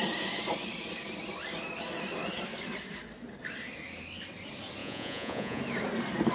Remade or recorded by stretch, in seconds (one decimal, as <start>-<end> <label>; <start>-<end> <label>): 0.0-4.8 recorded; 4.8-5.6 remade; 5.6-6.3 recorded